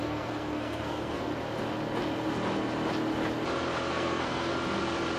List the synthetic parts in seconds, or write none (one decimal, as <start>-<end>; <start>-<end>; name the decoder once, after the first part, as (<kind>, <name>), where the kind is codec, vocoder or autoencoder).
0.0-1.3 (codec, SNAC); 3.9-4.5